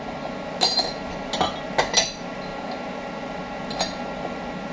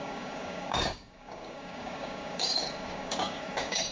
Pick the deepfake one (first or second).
second